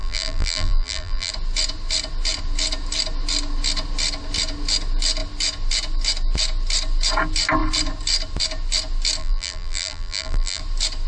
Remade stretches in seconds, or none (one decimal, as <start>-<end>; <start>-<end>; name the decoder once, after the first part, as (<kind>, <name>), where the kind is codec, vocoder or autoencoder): 0.0-1.3 (vocoder, BigVGAN v2); 9.2-10.6